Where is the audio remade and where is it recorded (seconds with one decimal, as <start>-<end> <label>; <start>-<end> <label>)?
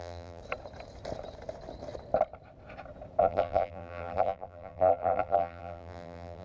0.0-0.4 remade; 0.4-3.2 recorded; 3.2-6.4 remade